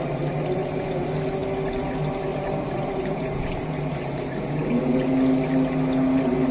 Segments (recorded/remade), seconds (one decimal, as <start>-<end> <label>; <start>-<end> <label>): 0.0-2.3 recorded; 2.3-4.4 remade; 4.4-6.5 recorded